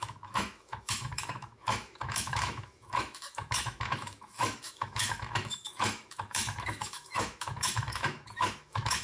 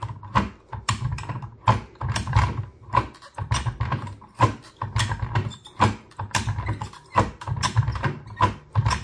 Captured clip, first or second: second